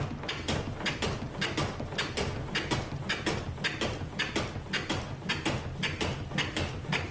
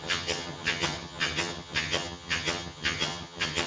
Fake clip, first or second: second